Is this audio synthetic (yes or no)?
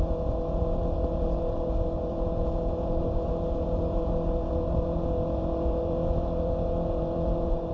yes